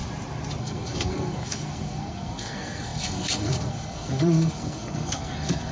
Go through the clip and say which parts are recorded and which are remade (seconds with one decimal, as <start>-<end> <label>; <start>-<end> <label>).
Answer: 0.0-0.6 recorded; 0.6-5.7 remade